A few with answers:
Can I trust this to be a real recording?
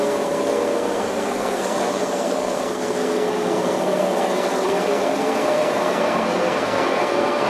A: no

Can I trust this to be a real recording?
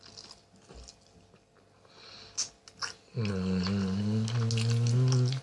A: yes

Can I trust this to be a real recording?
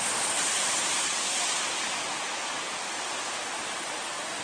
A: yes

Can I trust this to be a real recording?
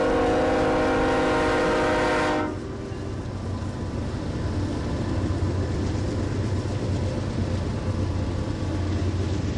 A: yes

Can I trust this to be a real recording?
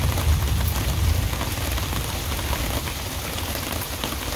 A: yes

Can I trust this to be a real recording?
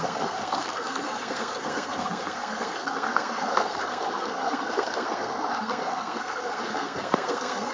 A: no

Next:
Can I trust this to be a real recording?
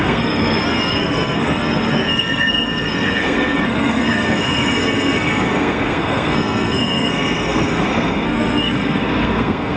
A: no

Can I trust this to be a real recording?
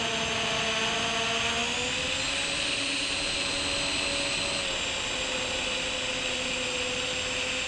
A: yes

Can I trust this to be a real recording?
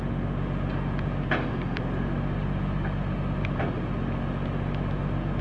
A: yes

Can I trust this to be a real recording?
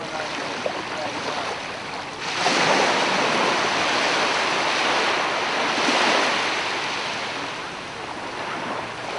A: yes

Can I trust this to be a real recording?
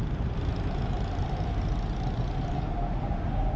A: yes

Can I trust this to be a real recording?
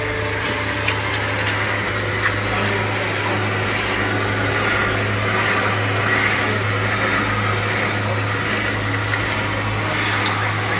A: yes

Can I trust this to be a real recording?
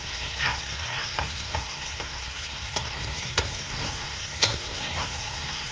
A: no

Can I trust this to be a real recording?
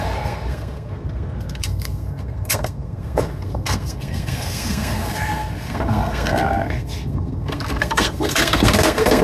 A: no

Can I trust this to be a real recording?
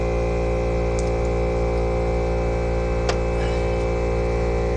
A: yes